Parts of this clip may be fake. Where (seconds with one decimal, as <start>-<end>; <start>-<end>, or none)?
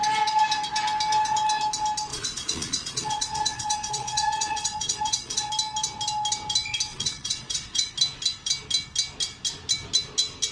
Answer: 2.1-5.5; 6.9-7.9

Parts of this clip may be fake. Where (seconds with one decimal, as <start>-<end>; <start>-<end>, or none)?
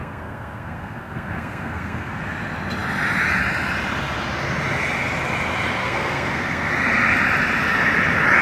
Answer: 0.0-2.2; 5.8-6.7